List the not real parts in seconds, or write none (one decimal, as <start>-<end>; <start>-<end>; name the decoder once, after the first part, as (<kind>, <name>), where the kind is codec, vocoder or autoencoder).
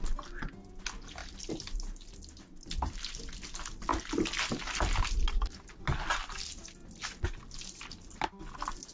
none